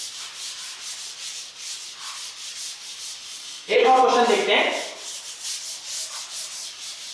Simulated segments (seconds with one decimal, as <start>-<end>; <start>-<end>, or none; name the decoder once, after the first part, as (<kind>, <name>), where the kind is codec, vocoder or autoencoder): 3.4-4.0 (codec, SNAC)